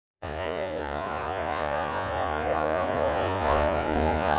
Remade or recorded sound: remade